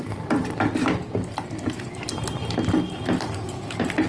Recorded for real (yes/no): yes